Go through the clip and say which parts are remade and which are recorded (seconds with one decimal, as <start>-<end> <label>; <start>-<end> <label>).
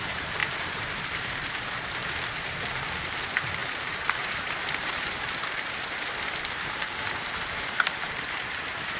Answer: 0.0-9.0 remade